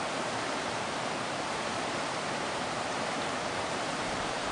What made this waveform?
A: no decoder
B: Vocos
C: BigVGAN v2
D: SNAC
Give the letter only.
C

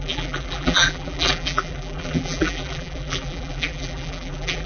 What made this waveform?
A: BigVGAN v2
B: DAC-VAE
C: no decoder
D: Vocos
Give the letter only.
A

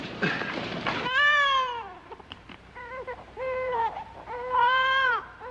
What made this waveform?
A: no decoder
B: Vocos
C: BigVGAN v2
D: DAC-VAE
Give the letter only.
C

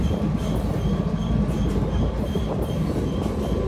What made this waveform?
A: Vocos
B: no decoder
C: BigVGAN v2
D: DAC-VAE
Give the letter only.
B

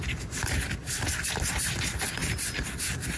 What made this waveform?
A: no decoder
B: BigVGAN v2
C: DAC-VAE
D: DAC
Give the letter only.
A